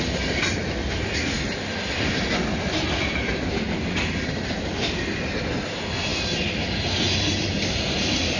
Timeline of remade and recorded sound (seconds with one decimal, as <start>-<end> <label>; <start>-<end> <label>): 0.0-8.4 recorded